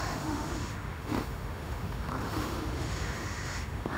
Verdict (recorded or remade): remade